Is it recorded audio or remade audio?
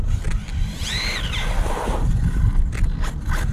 recorded